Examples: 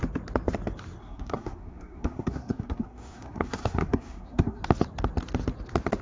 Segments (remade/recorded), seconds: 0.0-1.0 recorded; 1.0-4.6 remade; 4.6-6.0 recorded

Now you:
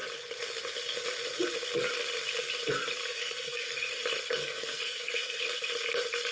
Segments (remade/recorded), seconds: 0.0-3.0 recorded; 3.0-3.9 remade; 3.9-4.4 recorded; 4.4-5.4 remade; 5.4-6.3 recorded